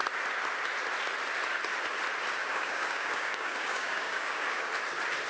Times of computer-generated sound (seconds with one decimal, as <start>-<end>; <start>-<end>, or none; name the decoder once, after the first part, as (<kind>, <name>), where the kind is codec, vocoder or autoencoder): 2.4-4.7 (codec, DAC)